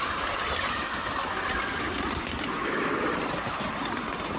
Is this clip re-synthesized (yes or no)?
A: no